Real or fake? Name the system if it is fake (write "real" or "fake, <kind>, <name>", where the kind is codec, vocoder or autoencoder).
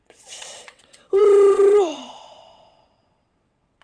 fake, vocoder, WaveNeXt